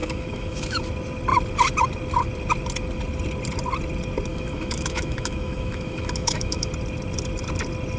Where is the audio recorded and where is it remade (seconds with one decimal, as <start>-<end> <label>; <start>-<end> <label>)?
0.0-0.8 remade; 0.8-4.3 recorded; 4.3-6.7 remade; 6.7-8.0 recorded